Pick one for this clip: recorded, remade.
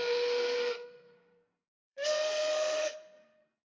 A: remade